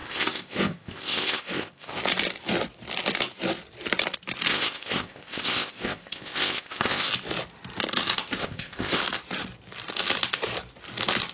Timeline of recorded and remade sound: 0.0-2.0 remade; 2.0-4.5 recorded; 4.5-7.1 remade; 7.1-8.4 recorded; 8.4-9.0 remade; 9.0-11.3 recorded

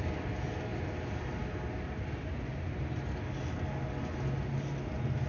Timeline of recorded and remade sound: 0.0-5.3 recorded

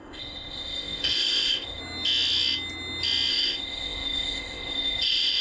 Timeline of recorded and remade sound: 0.0-1.8 remade; 1.8-3.3 recorded; 3.3-5.4 remade

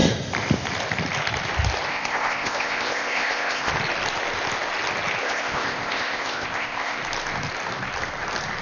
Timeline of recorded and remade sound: 0.0-1.9 recorded; 1.9-3.7 remade; 3.7-5.2 recorded; 5.2-7.0 remade; 7.0-8.6 recorded

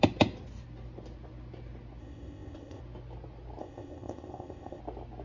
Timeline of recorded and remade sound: 0.0-2.0 recorded; 2.0-2.8 remade; 2.8-3.6 recorded; 3.6-4.8 remade; 4.8-5.2 recorded

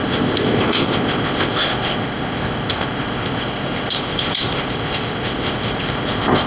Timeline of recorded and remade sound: 0.0-6.5 remade